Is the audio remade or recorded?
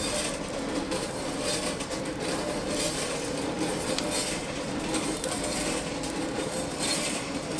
recorded